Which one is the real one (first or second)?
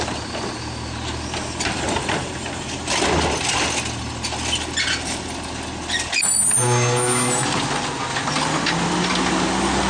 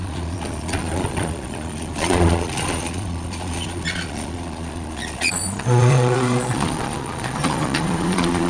first